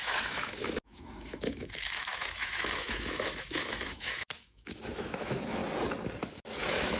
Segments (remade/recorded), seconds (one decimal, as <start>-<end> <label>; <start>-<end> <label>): 0.0-5.6 remade; 5.6-6.2 recorded; 6.2-7.0 remade